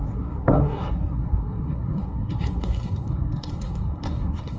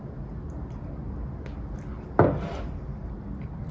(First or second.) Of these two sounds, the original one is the second